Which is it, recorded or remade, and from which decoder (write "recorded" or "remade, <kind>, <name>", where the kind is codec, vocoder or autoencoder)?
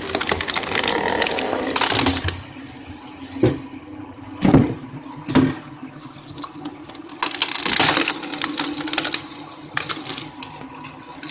recorded